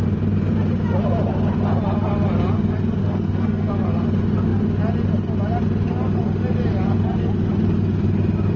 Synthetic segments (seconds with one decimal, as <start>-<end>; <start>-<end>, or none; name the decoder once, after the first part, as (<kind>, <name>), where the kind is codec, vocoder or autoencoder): 3.0-3.7 (codec, SNAC)